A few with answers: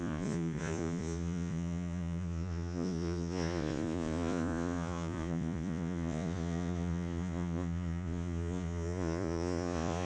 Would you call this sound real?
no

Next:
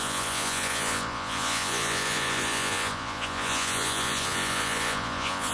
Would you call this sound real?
no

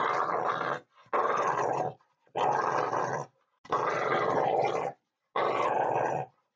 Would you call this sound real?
yes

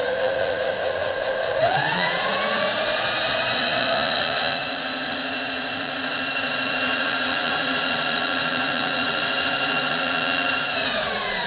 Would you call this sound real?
no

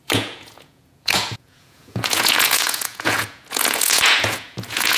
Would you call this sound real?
no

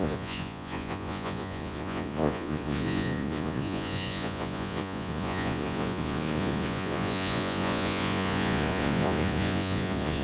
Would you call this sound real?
no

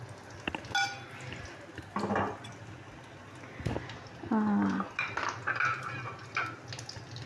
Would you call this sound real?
yes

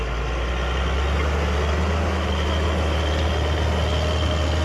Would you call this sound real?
yes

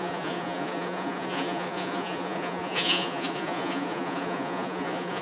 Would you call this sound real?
no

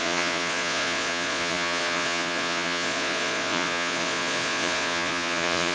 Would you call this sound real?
no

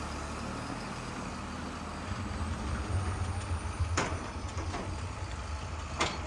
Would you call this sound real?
yes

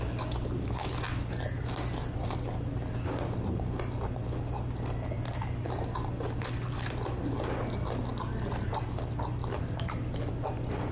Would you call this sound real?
yes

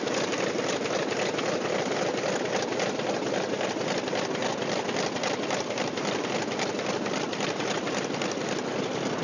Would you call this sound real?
yes